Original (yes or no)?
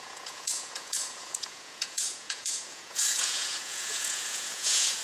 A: no